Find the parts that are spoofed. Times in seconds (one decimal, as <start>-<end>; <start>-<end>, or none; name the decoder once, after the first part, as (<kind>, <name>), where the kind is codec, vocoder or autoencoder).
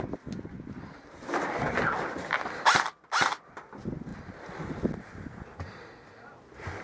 none